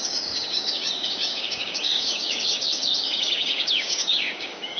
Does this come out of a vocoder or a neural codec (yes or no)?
yes